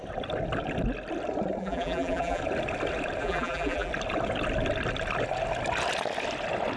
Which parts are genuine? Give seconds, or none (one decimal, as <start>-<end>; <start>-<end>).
0.0-1.6; 2.4-3.2; 3.9-6.8